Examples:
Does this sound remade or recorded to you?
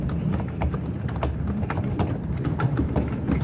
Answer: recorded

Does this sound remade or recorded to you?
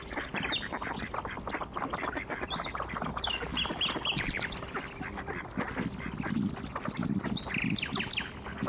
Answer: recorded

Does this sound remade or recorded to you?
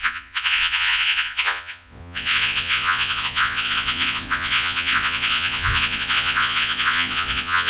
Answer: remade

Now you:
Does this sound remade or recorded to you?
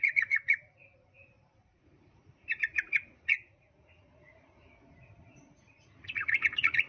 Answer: remade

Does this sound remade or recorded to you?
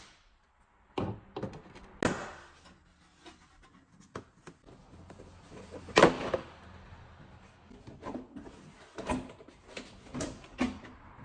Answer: recorded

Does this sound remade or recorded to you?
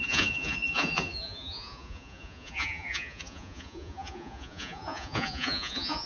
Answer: remade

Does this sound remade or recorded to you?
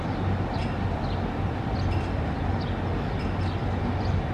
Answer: recorded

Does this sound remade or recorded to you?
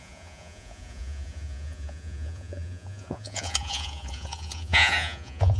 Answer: remade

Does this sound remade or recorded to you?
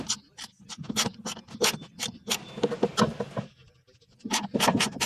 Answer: recorded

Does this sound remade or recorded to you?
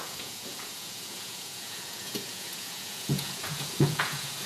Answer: remade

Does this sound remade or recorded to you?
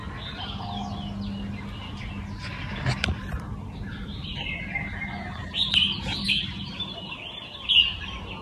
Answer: recorded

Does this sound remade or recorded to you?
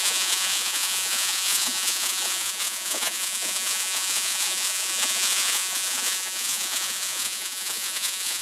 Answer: remade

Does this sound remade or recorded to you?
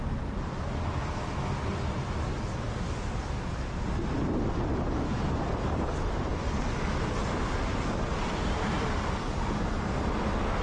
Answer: recorded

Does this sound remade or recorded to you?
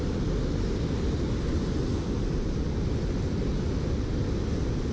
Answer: recorded